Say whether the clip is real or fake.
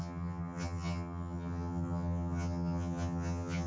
fake